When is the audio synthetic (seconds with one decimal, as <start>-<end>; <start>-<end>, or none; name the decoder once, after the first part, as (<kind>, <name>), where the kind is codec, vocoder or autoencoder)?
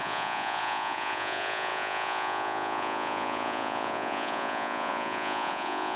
0.0-6.0 (vocoder, Vocos)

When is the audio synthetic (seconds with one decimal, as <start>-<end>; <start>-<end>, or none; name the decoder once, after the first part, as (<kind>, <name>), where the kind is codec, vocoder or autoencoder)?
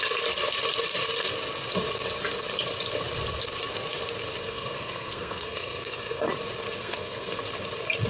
4.4-6.3 (codec, SNAC); 6.8-7.4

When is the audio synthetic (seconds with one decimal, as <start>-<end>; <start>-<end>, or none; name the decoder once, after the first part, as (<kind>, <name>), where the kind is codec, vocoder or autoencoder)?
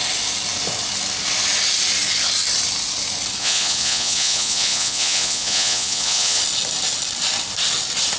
3.4-6.4 (vocoder, Vocos)